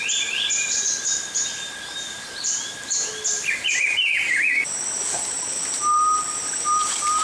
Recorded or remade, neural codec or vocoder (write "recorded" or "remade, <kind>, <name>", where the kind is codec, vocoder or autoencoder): recorded